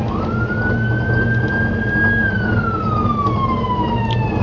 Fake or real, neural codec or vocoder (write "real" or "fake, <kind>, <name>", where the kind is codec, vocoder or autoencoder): real